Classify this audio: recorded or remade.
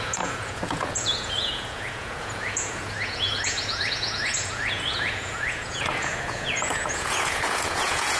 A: remade